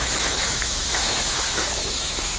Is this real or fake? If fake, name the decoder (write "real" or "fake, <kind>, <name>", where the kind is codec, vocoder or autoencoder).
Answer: fake, autoencoder, DAC-VAE